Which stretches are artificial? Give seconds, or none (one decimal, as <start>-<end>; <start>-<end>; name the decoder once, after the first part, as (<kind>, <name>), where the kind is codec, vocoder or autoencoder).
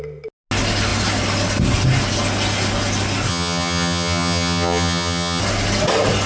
3.3-5.4 (vocoder, HiFi-GAN)